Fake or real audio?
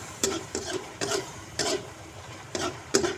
fake